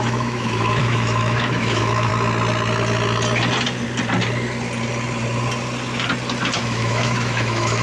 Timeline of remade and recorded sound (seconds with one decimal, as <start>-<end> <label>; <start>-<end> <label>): 0.0-2.1 remade; 2.1-6.6 recorded; 6.6-7.8 remade